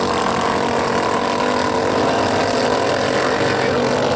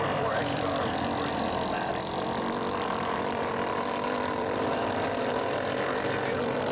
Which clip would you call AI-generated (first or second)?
second